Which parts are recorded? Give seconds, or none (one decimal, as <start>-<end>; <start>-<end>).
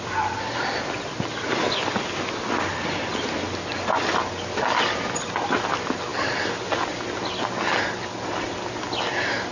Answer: 0.0-9.5